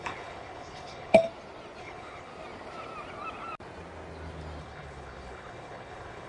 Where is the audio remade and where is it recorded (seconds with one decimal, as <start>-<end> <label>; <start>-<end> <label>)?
0.0-1.2 remade; 1.2-1.8 recorded; 1.8-2.3 remade; 2.3-4.6 recorded; 4.6-6.3 remade